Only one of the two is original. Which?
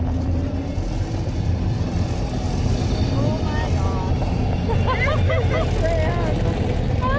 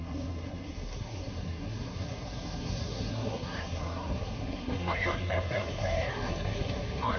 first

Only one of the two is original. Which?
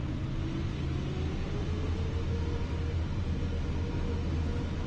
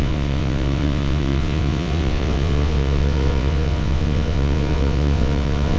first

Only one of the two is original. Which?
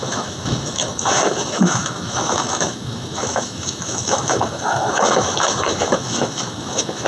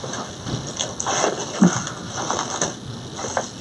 second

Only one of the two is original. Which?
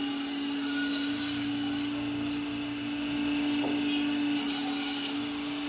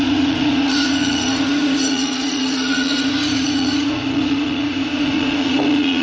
first